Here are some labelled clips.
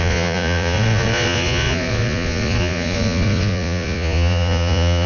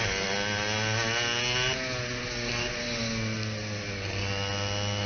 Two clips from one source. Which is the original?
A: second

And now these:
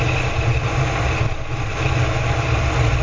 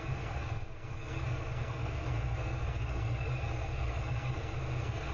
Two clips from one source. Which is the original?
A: first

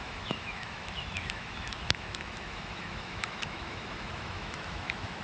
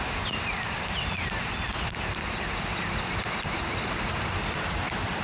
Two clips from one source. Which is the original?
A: second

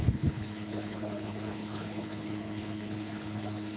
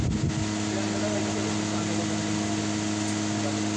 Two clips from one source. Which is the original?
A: second